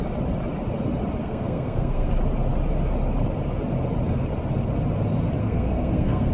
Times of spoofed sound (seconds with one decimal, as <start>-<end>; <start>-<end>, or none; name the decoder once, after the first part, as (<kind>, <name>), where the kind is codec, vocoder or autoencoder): 1.2-2.1 (codec, SNAC); 5.4-6.3

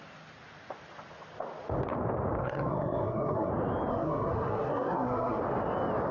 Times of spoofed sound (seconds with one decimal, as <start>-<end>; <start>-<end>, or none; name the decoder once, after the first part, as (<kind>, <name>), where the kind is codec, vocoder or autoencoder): 2.4-3.5 (codec, SNAC); 3.9-5.4

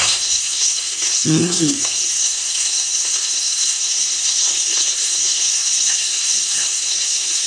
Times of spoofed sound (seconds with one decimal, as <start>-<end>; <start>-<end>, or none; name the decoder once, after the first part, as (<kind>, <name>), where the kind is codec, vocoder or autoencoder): 0.0-7.5 (codec, SNAC)

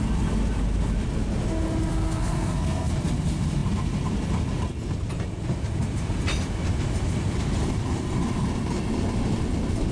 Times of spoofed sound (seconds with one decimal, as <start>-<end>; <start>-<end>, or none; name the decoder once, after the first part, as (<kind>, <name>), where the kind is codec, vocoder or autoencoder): 1.9-2.9 (codec, SNAC)

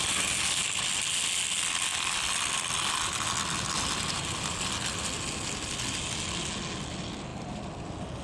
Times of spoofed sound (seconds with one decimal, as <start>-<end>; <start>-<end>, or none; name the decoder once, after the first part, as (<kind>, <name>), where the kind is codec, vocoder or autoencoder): none

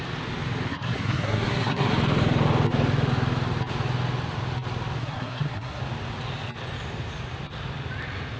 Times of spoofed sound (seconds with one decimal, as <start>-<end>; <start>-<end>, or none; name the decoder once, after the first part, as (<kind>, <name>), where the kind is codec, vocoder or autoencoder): 0.7-1.9 (codec, SNAC); 5.0-5.8

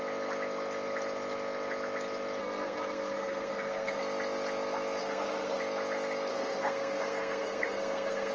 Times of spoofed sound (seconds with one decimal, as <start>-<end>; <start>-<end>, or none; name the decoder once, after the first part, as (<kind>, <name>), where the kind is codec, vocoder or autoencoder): 2.4-4.0 (codec, SNAC); 5.0-5.6; 6.3-8.3